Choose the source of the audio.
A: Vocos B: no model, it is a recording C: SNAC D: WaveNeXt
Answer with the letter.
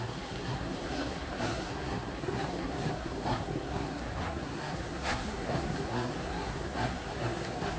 C